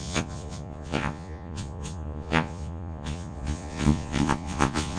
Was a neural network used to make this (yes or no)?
yes